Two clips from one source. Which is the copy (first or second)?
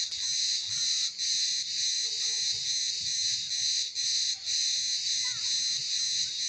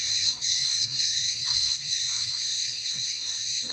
second